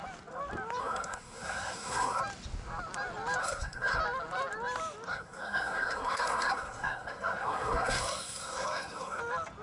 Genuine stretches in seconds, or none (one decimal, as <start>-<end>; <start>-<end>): 0.0-0.8; 2.2-3.4; 4.0-5.1; 9.2-9.6

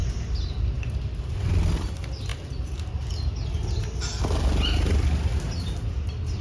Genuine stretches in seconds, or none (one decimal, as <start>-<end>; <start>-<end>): 0.0-6.4

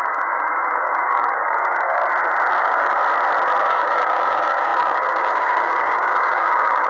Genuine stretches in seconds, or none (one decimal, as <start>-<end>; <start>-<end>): 2.0-2.6; 3.0-3.6

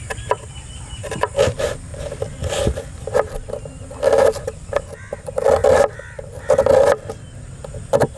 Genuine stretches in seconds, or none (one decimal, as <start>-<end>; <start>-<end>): 0.0-1.9; 2.9-5.6; 6.7-8.2

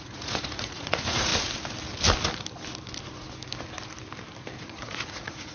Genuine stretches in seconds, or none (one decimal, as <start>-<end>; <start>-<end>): 1.3-4.6